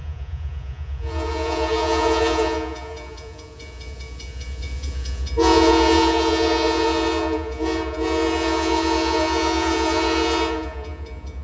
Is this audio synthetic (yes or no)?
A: yes